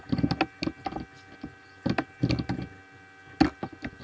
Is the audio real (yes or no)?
yes